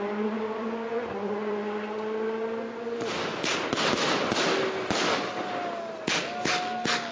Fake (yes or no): no